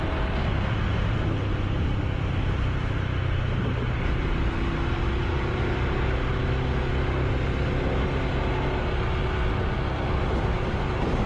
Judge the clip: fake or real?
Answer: real